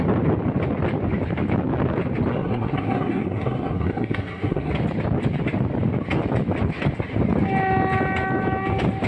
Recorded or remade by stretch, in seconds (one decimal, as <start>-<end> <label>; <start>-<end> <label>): 0.0-2.3 recorded; 2.3-4.7 remade; 4.7-9.1 recorded